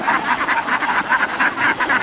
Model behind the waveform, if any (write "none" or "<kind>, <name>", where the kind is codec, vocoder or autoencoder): none